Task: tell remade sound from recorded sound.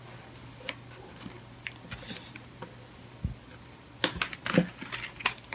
recorded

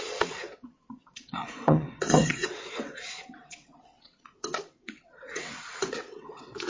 remade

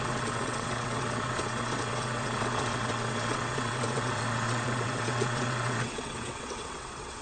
remade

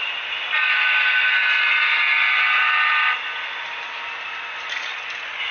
recorded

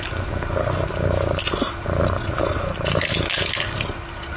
recorded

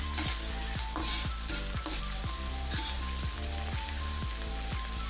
recorded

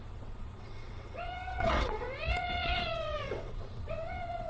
remade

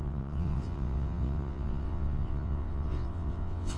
remade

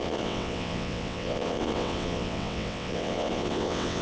remade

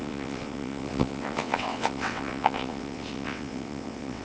remade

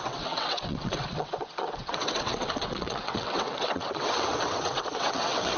remade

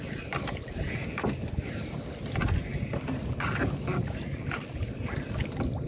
recorded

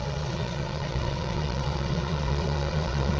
remade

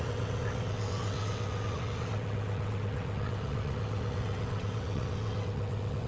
remade